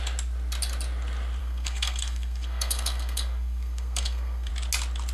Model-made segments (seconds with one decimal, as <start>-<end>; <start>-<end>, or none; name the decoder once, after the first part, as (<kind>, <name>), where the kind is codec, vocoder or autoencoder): 1.4-4.5 (codec, SNAC)